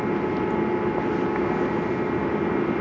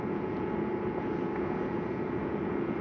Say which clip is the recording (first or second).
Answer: first